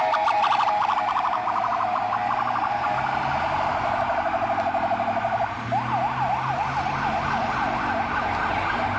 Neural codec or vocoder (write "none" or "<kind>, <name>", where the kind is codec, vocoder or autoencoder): none